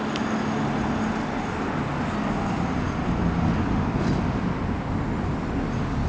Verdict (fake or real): real